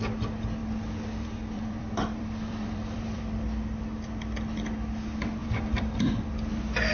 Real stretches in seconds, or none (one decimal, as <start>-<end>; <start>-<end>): 0.0-0.6; 3.2-5.4; 6.1-6.9